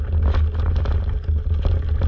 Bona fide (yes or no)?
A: yes